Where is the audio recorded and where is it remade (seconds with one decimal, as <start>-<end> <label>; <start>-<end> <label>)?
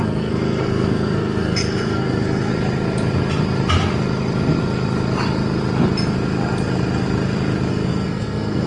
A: 0.0-2.5 remade; 2.5-7.7 recorded; 7.7-8.7 remade